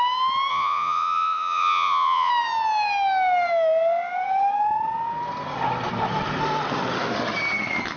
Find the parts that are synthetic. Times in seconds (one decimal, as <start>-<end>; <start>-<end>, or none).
0.5-2.3